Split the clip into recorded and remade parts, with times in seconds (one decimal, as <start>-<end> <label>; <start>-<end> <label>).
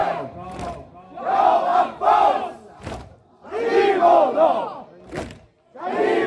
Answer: 0.0-3.7 remade; 3.7-6.3 recorded